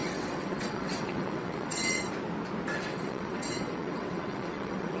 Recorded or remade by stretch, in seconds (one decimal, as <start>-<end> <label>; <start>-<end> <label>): 0.0-2.1 remade; 2.1-2.7 recorded; 2.7-5.0 remade